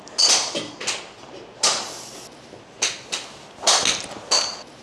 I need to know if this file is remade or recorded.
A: recorded